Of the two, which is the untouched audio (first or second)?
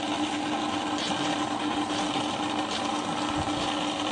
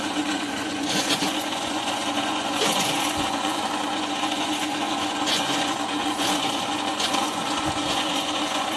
first